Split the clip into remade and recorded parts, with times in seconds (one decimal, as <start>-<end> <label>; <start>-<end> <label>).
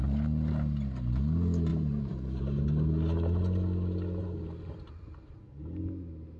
0.0-1.7 recorded; 1.7-2.4 remade; 2.4-4.2 recorded; 4.2-5.4 remade; 5.4-6.4 recorded